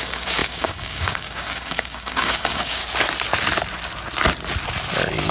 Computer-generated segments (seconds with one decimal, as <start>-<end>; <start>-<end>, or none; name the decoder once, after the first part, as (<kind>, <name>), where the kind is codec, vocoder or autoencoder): 0.0-2.8 (codec, DAC)